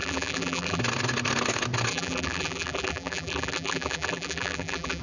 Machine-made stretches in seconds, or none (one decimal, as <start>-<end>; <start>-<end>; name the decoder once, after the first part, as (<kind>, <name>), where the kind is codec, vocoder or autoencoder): 0.0-0.8 (vocoder, BigVGAN v2); 1.9-5.0